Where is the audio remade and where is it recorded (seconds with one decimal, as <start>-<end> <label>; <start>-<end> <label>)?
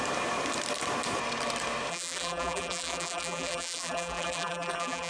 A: 0.0-1.9 recorded; 1.9-5.1 remade